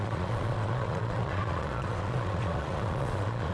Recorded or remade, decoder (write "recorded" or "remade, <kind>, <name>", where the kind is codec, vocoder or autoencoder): remade, vocoder, Vocos